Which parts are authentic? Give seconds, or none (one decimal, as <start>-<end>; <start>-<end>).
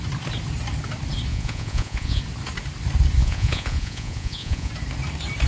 0.0-1.3; 2.2-3.2; 4.7-5.5